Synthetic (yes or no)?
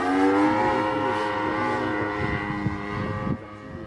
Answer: no